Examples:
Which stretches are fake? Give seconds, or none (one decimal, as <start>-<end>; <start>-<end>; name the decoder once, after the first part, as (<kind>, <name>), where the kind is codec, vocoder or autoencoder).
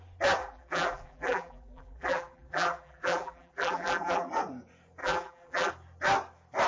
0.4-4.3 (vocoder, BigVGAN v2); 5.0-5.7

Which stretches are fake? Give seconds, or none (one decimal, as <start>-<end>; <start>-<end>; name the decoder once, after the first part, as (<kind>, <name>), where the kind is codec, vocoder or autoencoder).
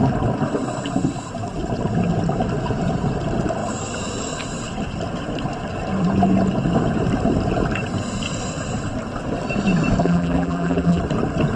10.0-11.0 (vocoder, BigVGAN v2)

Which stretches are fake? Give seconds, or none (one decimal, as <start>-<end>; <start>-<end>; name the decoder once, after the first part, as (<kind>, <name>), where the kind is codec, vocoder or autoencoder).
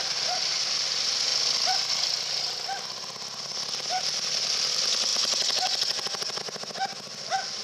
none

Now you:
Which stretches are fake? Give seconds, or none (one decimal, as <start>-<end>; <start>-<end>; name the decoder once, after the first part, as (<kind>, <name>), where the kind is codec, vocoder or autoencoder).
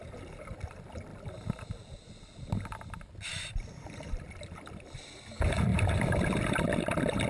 3.3-4.4 (vocoder, BigVGAN v2)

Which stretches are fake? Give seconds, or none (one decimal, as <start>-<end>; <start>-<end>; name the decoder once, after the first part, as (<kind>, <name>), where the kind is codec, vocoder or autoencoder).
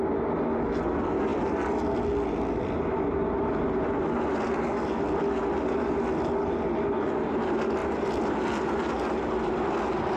1.3-2.0 (vocoder, BigVGAN v2); 7.8-8.7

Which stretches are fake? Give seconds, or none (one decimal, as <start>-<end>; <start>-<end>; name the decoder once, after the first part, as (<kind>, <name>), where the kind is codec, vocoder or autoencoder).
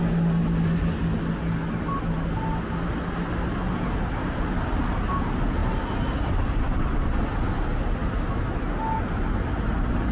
none